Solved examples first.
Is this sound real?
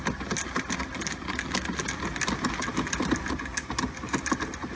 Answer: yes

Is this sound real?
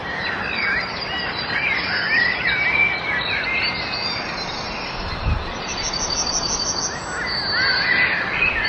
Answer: yes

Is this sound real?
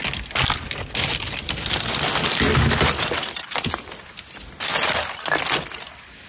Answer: yes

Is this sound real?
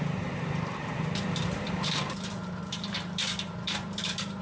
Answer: no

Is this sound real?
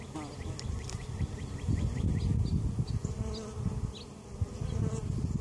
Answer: yes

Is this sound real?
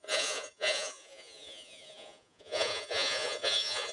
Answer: no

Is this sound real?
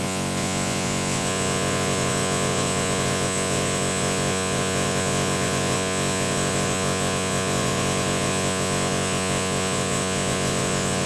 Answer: no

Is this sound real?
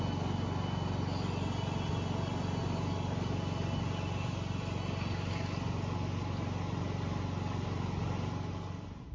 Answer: yes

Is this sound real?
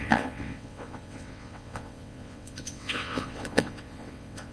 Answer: no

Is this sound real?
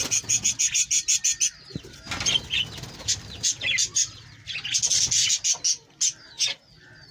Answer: yes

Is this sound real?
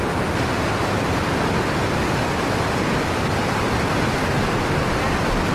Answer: yes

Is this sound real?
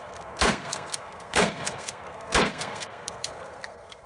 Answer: no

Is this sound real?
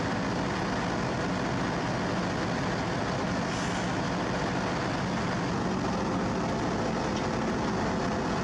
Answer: yes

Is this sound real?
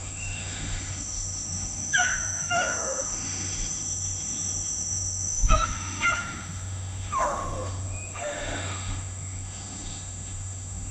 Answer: no